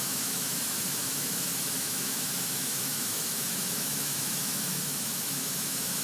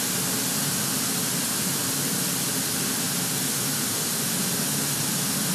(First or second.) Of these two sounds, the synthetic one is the first